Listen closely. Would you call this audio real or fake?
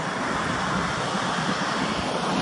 real